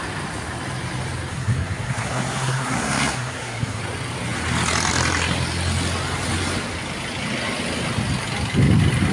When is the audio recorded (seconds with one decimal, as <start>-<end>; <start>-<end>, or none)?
0.0-1.3; 3.8-9.1